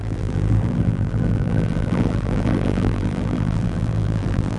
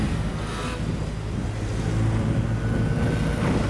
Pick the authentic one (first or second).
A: second